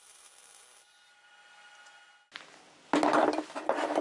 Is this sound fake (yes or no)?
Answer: no